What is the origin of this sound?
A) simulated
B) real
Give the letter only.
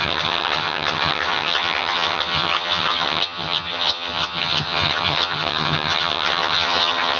A